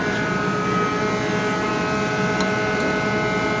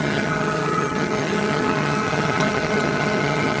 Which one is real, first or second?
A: first